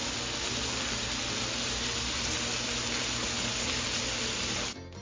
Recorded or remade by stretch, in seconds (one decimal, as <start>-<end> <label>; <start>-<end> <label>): 0.0-5.0 recorded